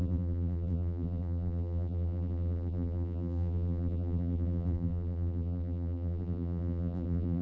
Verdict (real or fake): fake